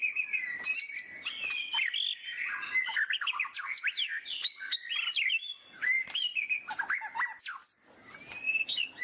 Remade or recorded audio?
recorded